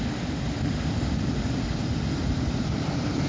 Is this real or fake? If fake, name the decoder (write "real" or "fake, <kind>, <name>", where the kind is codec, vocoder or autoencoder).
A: fake, vocoder, BigVGAN v2